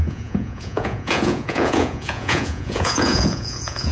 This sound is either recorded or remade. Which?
remade